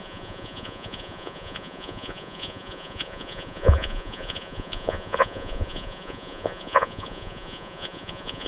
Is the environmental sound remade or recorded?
remade